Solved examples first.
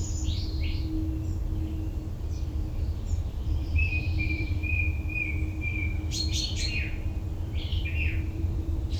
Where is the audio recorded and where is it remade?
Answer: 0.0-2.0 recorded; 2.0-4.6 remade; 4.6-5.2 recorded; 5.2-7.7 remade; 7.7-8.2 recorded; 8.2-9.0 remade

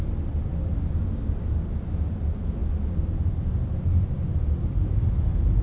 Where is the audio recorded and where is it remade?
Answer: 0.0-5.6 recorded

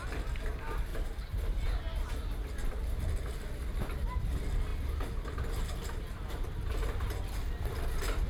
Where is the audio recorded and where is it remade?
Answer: 0.0-0.9 recorded; 0.9-1.8 remade; 1.8-8.3 recorded

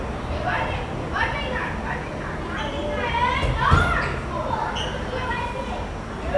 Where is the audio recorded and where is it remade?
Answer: 0.0-6.4 recorded

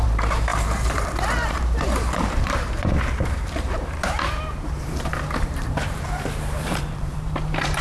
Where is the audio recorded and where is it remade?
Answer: 0.0-7.8 remade

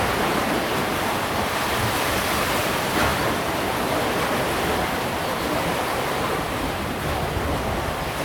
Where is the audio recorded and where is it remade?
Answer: 0.0-0.4 remade; 0.4-1.1 recorded; 1.1-8.2 remade